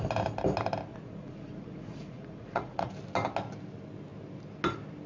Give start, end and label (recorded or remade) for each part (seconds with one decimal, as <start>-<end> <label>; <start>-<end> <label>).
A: 0.0-0.9 recorded; 0.9-2.9 remade; 2.9-5.1 recorded